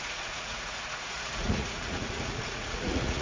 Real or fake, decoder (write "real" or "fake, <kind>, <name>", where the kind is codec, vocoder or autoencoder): fake, vocoder, Vocos